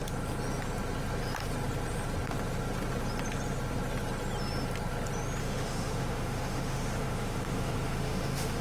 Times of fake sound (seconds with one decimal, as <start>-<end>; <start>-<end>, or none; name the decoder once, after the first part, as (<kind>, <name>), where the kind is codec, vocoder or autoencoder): 5.4-8.6 (autoencoder, DAC-VAE)